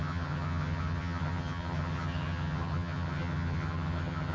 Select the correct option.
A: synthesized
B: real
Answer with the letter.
A